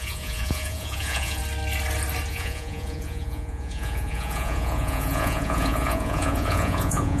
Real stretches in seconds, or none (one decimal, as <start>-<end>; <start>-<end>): 1.4-2.3